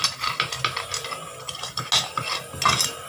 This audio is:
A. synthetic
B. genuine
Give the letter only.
B